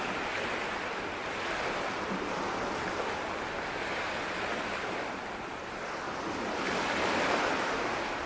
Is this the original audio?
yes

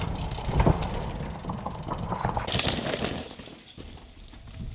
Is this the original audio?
yes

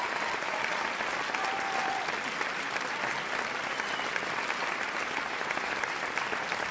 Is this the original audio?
yes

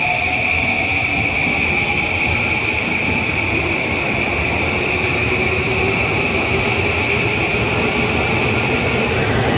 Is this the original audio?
yes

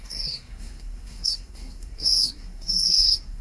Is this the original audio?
no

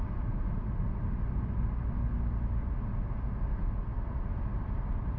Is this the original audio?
yes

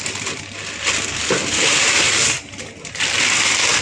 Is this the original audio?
yes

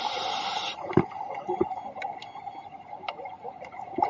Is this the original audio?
yes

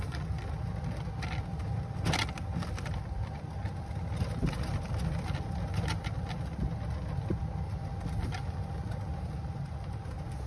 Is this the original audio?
yes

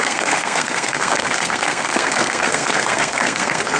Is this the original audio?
no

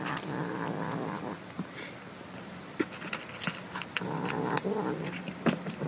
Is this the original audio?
yes